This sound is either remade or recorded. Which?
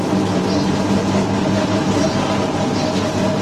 recorded